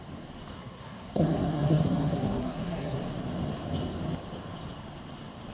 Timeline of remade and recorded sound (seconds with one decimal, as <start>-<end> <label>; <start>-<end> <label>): 0.0-0.5 recorded; 0.5-3.0 remade; 3.0-5.5 recorded